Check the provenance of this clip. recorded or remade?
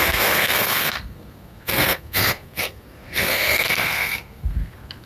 remade